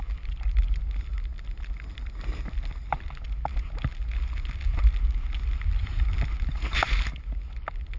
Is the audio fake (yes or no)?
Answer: no